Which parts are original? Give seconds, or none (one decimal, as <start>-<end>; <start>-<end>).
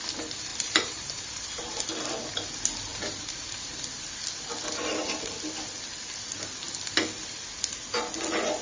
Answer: 0.0-0.5; 1.8-2.9; 3.8-8.6